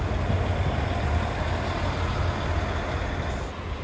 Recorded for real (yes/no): yes